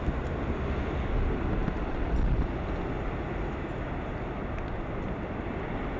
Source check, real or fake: real